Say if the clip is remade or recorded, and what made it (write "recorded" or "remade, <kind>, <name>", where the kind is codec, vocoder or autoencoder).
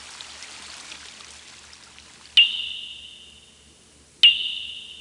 recorded